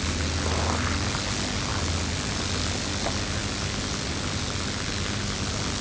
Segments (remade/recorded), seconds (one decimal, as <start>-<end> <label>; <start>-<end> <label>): 0.0-5.8 recorded